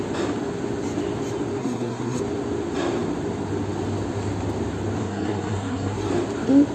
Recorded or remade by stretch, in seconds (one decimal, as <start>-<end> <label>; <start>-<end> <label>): 0.0-1.6 recorded; 1.6-2.2 remade; 2.2-5.0 recorded; 5.0-6.1 remade; 6.1-6.7 recorded